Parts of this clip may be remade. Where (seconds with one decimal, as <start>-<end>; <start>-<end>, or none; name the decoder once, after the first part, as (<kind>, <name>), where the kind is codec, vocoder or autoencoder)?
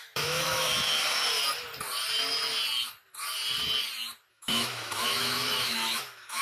0.0-0.7 (autoencoder, DAC-VAE); 4.3-6.4